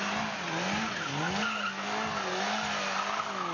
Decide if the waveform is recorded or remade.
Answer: recorded